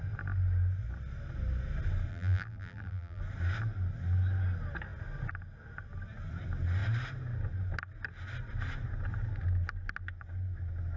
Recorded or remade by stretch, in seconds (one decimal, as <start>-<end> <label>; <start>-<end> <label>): 0.0-2.1 recorded; 2.1-3.2 remade; 3.2-11.0 recorded